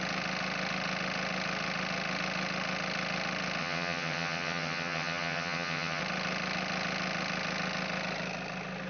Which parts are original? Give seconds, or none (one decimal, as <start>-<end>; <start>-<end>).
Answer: 0.0-3.6; 6.0-8.9